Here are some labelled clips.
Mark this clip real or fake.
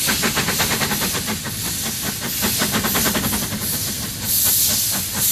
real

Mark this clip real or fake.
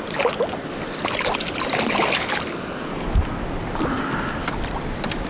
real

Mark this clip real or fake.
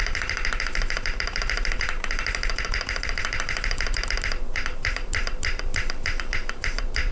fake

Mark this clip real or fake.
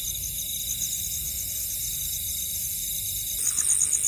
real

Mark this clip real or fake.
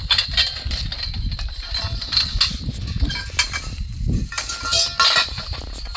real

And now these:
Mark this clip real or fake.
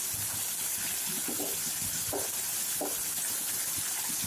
real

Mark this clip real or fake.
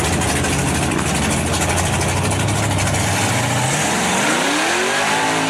real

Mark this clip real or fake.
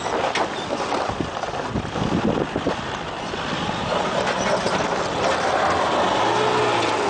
real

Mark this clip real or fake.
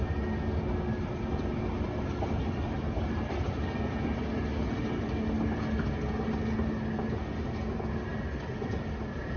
real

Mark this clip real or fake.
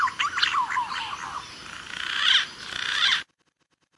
real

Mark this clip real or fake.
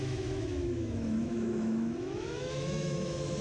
fake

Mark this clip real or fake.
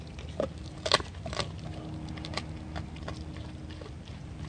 real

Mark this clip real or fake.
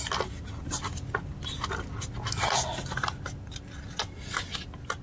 real